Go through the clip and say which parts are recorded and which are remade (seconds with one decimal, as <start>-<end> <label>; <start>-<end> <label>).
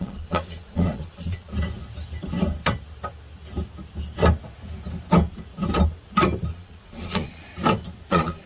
0.0-1.5 remade; 1.5-6.5 recorded; 6.5-7.5 remade; 7.5-8.1 recorded; 8.1-8.5 remade